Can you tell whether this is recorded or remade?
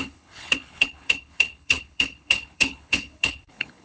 remade